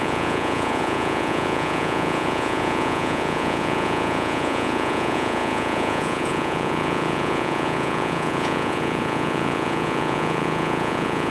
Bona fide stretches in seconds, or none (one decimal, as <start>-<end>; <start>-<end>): none